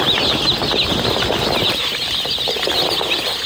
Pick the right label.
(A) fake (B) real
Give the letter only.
B